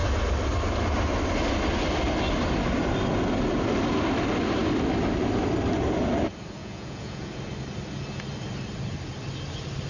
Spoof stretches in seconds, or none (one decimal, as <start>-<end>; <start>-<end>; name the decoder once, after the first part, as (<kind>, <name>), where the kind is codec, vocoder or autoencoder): 6.6-7.3 (vocoder, Vocos)